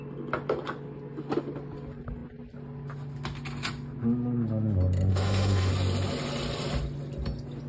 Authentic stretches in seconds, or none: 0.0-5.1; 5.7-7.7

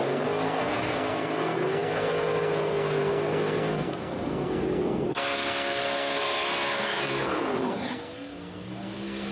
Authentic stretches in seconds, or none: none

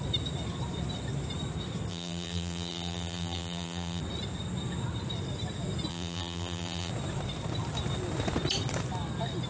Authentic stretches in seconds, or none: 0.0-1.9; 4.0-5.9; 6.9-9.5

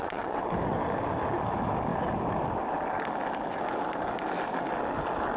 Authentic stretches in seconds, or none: 0.5-5.4

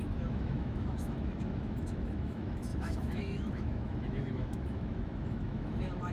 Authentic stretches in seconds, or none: none

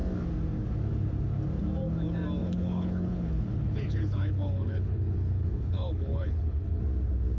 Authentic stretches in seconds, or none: 0.0-2.4; 6.8-7.4

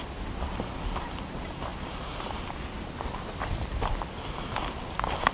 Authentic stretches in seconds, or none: 0.0-5.3

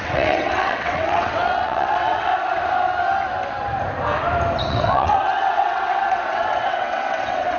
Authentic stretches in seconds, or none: 2.3-4.7